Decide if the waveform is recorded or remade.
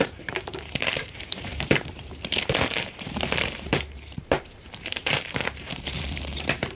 remade